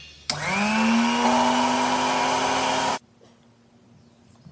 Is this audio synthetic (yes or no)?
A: no